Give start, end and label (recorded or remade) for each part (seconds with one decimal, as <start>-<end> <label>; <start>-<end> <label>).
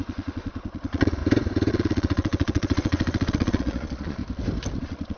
0.0-1.2 remade; 1.2-1.7 recorded; 1.7-4.2 remade; 4.2-4.8 recorded; 4.8-5.2 remade